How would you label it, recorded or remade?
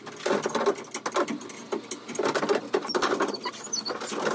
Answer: recorded